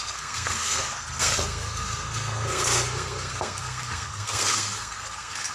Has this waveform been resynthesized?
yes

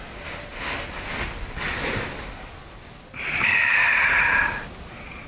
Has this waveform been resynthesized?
no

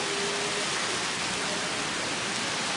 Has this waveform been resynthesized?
no